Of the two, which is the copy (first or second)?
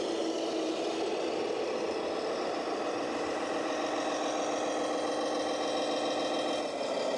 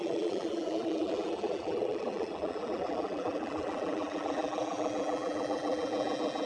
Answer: second